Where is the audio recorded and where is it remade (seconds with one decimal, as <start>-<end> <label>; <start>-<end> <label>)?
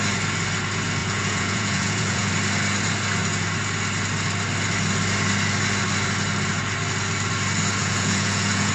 0.0-1.0 recorded; 1.0-2.3 remade; 2.3-7.8 recorded; 7.8-8.7 remade